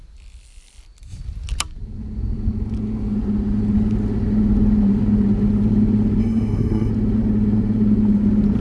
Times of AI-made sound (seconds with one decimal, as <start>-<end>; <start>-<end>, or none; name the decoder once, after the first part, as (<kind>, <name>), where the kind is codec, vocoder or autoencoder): 6.2-6.9 (codec, SNAC)